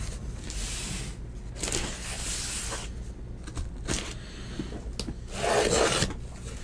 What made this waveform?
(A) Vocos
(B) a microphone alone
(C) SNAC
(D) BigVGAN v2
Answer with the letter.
B